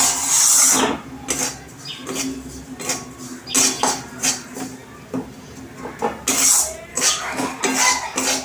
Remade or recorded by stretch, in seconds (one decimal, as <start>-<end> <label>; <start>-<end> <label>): 0.0-6.9 recorded; 6.9-7.6 remade; 7.6-8.4 recorded